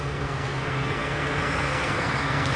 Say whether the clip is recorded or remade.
remade